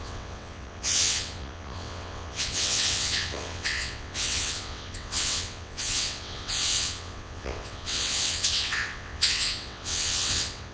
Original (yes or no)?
no